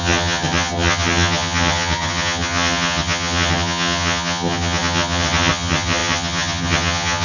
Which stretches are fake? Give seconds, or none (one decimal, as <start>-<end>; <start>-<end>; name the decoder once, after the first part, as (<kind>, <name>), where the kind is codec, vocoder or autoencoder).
0.0-7.2 (vocoder, HiFi-GAN)